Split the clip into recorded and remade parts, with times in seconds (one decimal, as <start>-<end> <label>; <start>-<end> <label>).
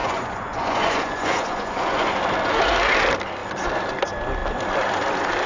0.0-2.2 remade; 2.2-5.5 recorded